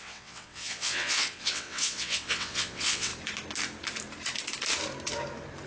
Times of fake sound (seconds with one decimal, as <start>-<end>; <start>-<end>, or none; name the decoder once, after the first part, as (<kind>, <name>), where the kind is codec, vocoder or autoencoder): 0.0-3.1 (vocoder, WaveNeXt)